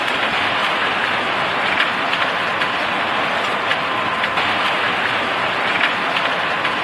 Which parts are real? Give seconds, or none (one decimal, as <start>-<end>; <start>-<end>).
0.0-0.6; 1.7-6.8